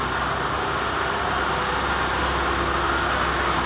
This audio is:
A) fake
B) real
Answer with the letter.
B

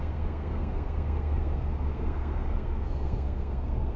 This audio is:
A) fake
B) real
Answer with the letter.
A